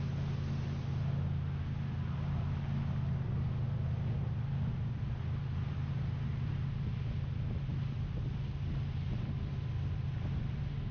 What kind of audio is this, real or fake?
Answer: real